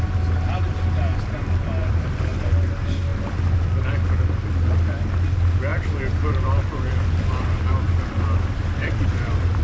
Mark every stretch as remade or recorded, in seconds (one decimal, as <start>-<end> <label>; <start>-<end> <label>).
0.0-1.8 recorded; 1.8-2.5 remade; 2.5-3.1 recorded; 3.1-3.9 remade; 3.9-5.7 recorded; 5.7-9.6 remade